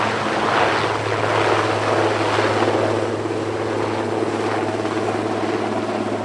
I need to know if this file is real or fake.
real